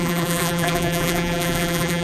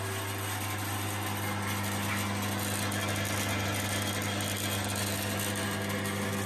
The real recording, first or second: second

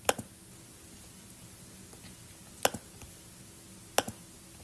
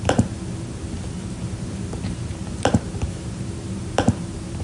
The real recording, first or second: first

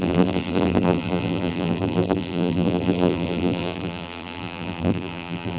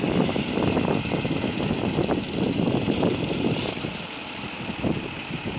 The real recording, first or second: second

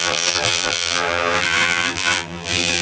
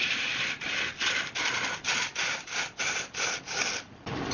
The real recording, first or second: second